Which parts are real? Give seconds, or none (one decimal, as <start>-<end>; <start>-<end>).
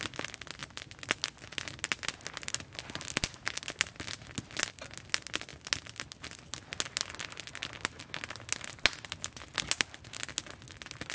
0.0-11.1